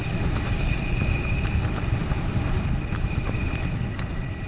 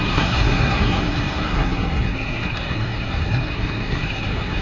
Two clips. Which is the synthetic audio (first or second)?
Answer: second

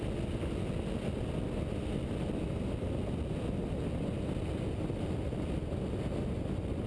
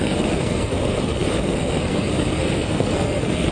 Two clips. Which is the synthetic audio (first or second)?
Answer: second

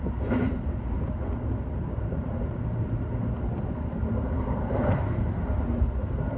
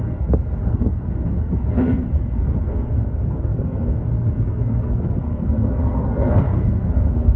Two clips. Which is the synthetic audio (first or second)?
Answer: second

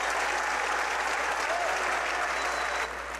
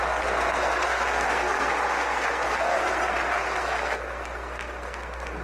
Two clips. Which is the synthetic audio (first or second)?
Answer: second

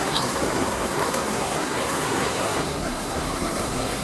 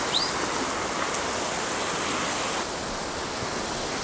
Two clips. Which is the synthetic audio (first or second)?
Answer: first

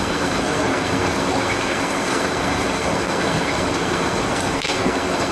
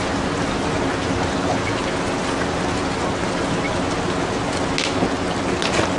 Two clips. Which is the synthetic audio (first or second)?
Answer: first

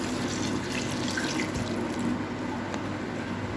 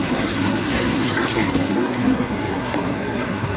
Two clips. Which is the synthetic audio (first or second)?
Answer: second